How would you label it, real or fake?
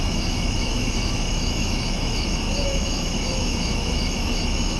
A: fake